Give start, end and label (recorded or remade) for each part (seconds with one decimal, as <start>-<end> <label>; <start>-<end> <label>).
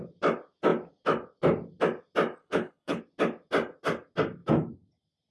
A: 0.0-2.4 recorded; 2.4-3.0 remade; 3.0-5.3 recorded